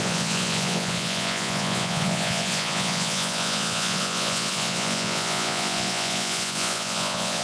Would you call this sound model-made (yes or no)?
yes